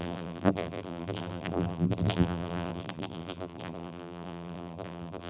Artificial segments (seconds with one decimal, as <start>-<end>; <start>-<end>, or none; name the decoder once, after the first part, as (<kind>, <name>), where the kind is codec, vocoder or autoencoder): 0.0-5.3 (vocoder, BigVGAN v2)